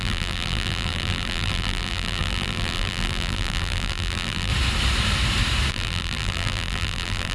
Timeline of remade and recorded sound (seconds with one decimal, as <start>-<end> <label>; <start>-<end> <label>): 0.0-4.5 remade; 4.5-5.7 recorded; 5.7-7.3 remade